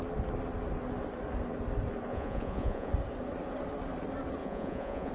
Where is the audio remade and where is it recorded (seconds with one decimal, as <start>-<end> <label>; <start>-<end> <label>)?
0.0-2.1 recorded; 2.1-2.9 remade; 2.9-4.4 recorded; 4.4-5.1 remade